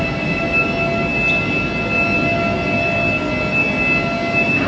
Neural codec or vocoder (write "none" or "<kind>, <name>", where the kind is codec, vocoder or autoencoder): none